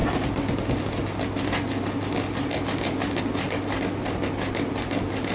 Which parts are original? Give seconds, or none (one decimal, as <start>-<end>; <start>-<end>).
0.0-5.3